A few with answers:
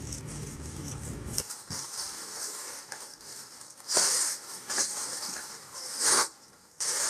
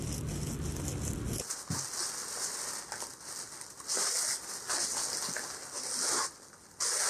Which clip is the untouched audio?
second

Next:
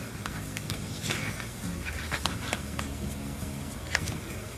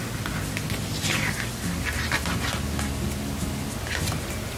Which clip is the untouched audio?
second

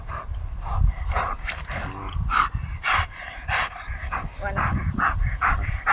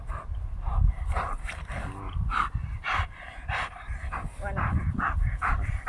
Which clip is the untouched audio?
second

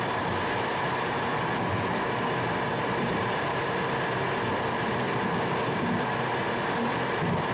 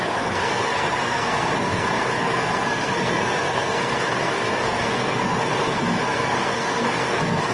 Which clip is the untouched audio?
first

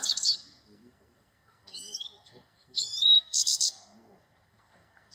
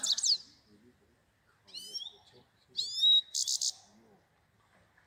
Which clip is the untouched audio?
second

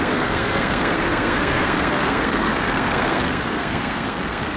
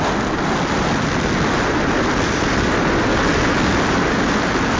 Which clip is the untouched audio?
second